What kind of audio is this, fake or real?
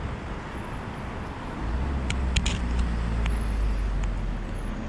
real